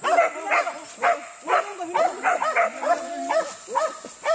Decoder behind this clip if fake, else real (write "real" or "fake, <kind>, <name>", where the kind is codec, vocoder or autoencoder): real